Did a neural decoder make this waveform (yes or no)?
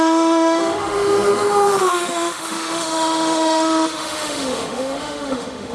yes